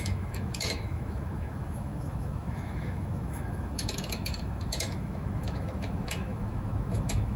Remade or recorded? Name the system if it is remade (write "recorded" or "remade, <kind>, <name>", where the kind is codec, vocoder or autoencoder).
remade, autoencoder, DAC-VAE